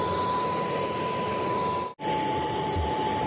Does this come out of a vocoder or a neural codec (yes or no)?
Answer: no